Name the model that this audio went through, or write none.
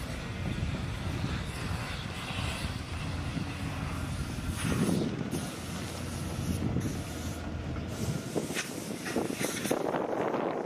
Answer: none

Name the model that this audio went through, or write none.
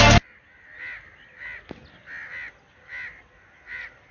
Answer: none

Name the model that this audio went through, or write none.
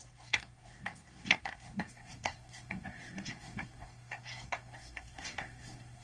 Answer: codec, SNAC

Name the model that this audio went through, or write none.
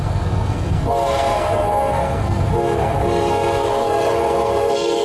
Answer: codec, SNAC